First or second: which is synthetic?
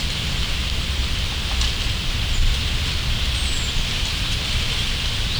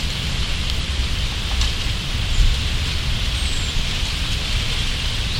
second